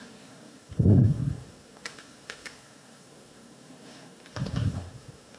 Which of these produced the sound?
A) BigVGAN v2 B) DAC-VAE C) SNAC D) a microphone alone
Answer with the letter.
C